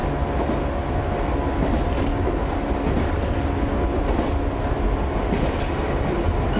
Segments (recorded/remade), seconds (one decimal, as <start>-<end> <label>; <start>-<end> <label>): 0.0-6.6 recorded